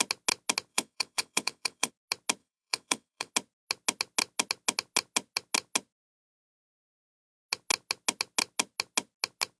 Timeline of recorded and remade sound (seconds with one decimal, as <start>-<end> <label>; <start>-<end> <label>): 0.0-0.7 recorded; 0.7-1.9 remade; 1.9-2.4 recorded; 2.4-3.3 remade; 3.3-9.6 recorded